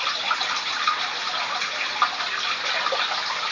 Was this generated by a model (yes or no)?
no